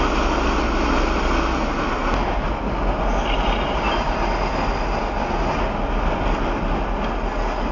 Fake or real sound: real